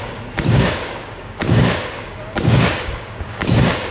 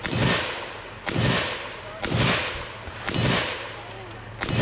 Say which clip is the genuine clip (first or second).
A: second